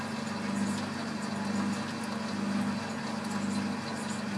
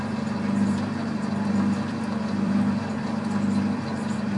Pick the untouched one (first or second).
first